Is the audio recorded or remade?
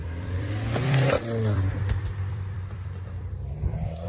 remade